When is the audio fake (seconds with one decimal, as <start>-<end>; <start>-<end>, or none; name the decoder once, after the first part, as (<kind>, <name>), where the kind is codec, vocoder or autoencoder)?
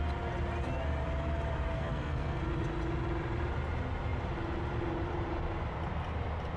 1.7-2.4 (codec, SNAC)